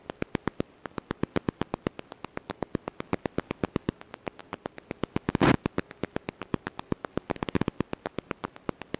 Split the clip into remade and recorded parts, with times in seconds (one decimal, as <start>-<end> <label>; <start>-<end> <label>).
0.0-9.0 recorded

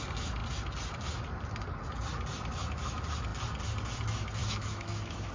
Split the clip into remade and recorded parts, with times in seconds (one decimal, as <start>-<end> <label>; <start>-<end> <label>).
0.0-4.4 recorded; 4.4-5.3 remade